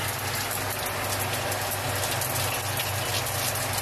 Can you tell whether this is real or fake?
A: real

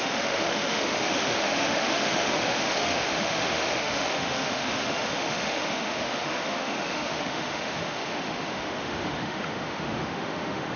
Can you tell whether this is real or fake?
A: fake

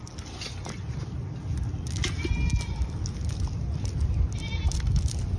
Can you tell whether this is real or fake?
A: real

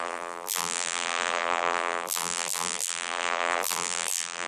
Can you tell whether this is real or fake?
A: fake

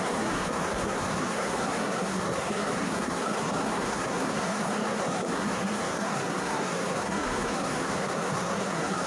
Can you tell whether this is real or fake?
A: fake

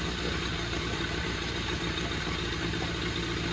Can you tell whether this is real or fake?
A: real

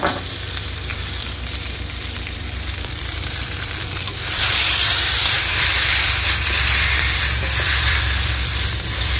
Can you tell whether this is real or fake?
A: fake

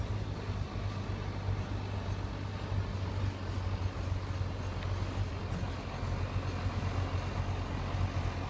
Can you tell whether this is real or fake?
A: real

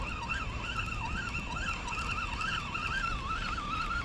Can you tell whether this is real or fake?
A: real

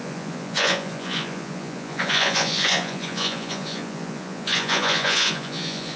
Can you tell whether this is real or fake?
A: fake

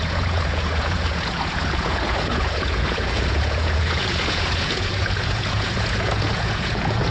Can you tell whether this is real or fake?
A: fake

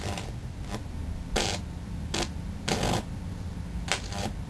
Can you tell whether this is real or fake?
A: real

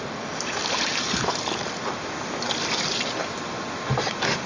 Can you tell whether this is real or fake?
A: real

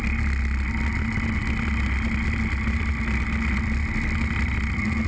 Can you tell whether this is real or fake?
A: real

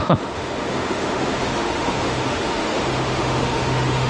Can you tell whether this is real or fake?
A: fake